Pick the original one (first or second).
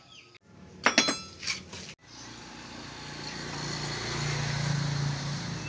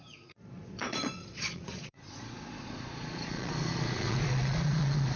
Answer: first